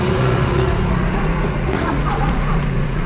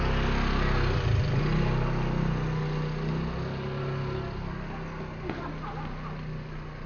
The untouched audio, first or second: second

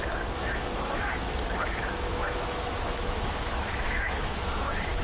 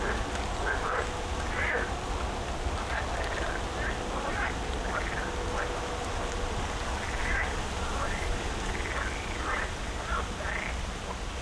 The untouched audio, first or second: second